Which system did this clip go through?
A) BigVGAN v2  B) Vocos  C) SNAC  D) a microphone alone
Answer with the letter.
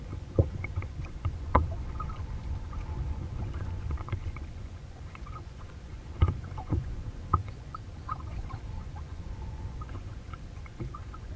B